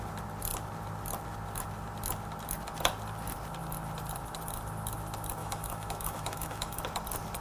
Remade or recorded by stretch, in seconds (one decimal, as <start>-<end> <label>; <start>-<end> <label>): 0.0-5.4 recorded; 5.4-6.8 remade; 6.8-7.4 recorded